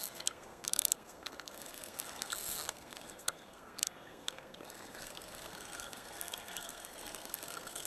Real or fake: fake